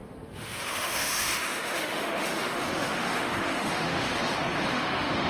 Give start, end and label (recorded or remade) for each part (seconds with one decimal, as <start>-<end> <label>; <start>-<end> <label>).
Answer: 0.0-4.1 remade; 4.1-4.7 recorded; 4.7-5.3 remade